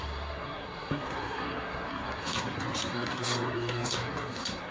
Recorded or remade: remade